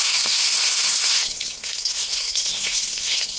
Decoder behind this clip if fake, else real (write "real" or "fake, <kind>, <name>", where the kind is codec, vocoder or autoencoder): fake, codec, SNAC